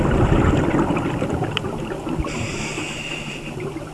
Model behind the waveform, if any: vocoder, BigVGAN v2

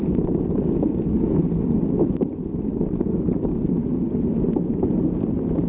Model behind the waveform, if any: vocoder, BigVGAN v2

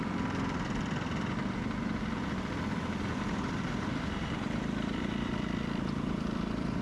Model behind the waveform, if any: vocoder, BigVGAN v2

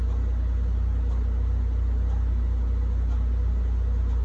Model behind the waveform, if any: none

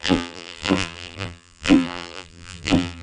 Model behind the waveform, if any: vocoder, BigVGAN v2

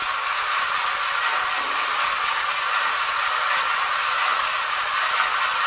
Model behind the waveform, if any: none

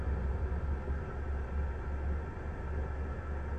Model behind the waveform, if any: none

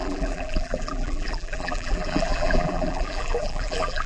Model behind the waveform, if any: vocoder, BigVGAN v2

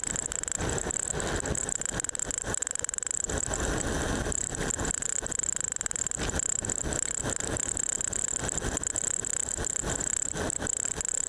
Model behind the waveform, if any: none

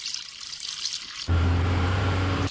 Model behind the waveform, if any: vocoder, BigVGAN v2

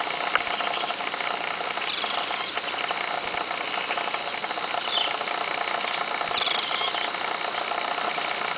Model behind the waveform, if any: none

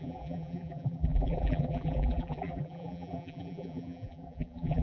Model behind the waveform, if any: vocoder, BigVGAN v2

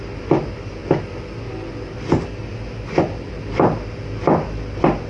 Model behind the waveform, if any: vocoder, BigVGAN v2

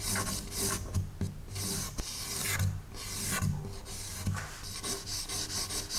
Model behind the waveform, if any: none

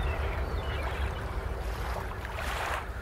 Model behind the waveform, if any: vocoder, BigVGAN v2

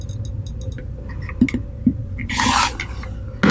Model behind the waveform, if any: none